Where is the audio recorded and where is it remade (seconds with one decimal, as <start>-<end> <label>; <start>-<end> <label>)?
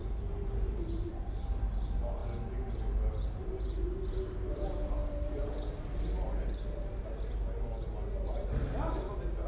0.0-1.6 remade; 1.6-5.0 recorded; 5.0-5.5 remade; 5.5-9.5 recorded